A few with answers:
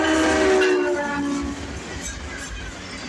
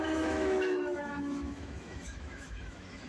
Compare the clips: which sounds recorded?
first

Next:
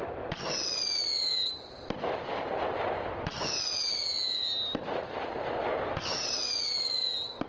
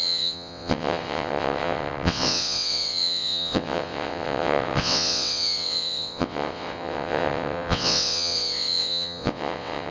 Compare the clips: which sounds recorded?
first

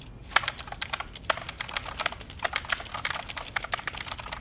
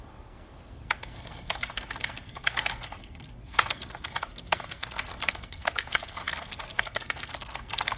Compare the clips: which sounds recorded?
first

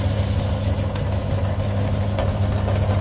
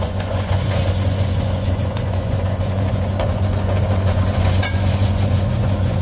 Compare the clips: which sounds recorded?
first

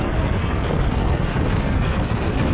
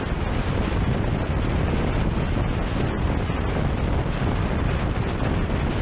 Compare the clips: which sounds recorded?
second